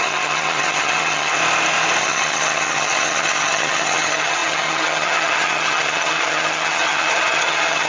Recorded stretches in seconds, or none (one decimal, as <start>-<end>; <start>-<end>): 1.4-2.0